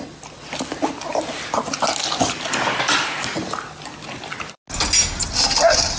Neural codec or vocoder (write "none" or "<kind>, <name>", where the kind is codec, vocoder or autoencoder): none